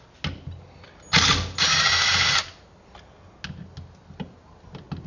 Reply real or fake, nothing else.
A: real